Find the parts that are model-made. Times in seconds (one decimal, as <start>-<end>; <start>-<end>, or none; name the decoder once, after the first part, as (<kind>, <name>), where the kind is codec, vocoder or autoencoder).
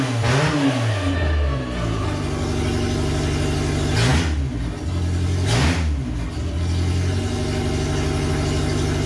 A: none